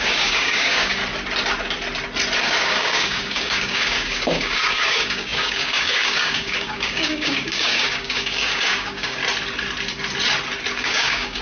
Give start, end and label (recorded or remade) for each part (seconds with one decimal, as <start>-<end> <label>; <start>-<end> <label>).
0.0-1.0 remade; 1.0-2.4 recorded; 2.4-9.2 remade; 9.2-10.7 recorded; 10.7-11.4 remade